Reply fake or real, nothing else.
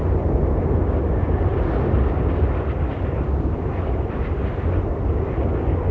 real